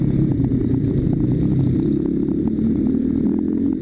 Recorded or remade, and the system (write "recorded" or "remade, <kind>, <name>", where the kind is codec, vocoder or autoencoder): recorded